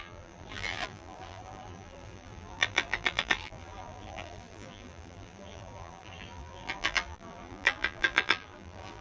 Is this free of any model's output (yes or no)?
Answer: no